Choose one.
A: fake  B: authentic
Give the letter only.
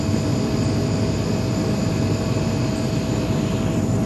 B